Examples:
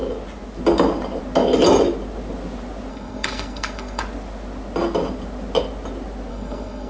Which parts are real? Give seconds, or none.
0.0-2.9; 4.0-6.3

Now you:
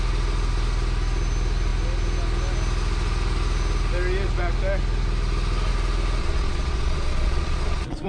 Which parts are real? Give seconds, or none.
0.0-6.2

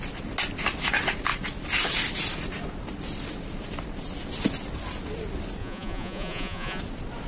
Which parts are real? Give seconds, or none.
0.0-5.6; 6.8-7.3